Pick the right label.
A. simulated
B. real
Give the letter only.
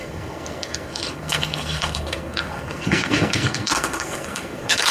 A